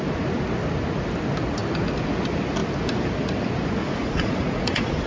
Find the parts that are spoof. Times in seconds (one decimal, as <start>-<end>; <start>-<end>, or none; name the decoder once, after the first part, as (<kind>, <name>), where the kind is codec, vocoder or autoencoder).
3.8-5.1 (vocoder, Vocos)